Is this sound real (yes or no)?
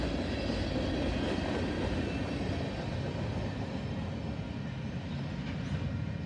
yes